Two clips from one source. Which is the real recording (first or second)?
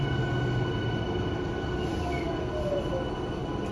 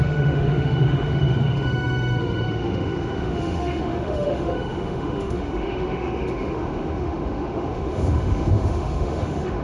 first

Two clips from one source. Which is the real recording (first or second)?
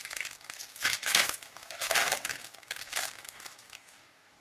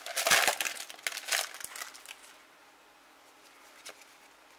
second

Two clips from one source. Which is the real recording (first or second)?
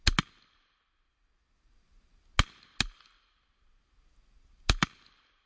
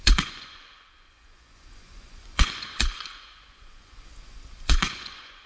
first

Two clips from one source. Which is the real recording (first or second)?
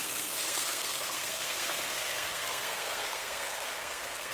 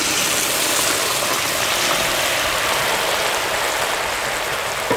second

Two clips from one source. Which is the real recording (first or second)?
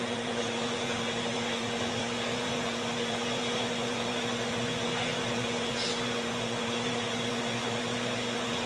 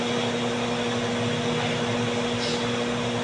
second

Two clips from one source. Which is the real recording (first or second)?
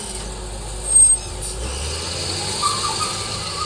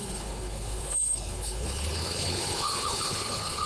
first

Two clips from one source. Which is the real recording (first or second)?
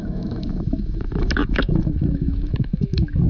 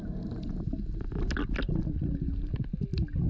second